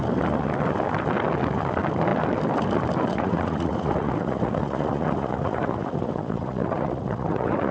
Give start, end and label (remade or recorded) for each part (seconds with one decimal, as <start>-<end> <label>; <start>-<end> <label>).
0.0-3.1 recorded; 3.1-7.7 remade